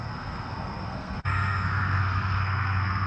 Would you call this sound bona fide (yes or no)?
no